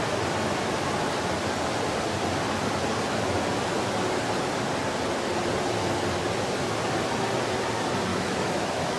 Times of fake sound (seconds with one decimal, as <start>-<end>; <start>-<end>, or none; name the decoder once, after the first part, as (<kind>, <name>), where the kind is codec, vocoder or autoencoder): 8.1-9.0 (autoencoder, DAC-VAE)